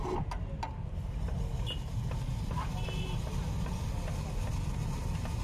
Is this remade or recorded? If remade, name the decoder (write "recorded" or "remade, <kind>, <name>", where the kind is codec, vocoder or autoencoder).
recorded